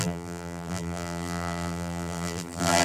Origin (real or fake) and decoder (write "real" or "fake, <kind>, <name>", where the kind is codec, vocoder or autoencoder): fake, vocoder, BigVGAN v2